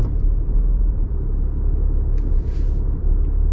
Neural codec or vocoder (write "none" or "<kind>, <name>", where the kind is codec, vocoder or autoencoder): vocoder, BigVGAN v2